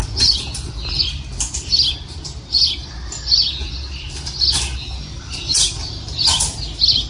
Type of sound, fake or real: real